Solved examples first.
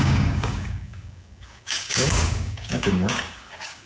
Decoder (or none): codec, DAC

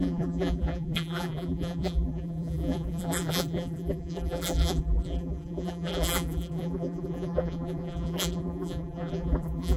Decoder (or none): vocoder, BigVGAN v2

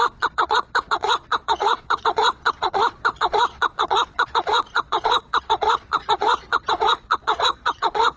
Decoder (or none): vocoder, Vocos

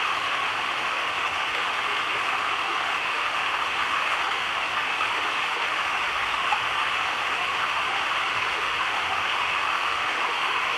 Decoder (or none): autoencoder, DAC-VAE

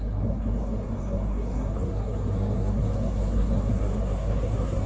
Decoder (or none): codec, SNAC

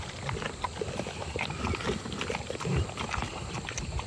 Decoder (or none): none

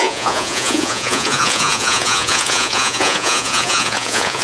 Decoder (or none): vocoder, Vocos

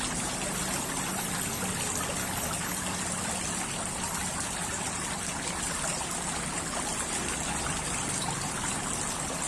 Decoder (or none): none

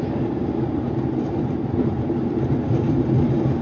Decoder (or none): vocoder, BigVGAN v2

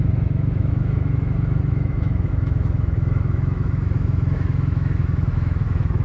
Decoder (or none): autoencoder, DAC-VAE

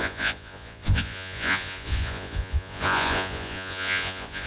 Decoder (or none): vocoder, Vocos